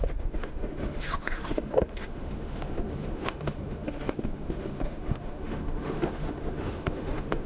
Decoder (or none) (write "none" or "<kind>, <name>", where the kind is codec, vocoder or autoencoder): autoencoder, DAC-VAE